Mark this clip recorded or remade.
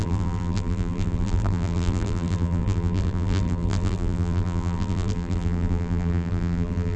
remade